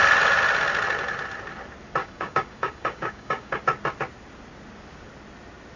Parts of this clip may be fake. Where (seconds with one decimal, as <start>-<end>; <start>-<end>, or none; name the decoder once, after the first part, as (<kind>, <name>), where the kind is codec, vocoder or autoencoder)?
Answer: 2.0-3.6 (codec, DAC)